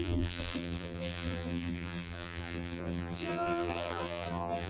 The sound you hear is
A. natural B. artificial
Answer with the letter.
B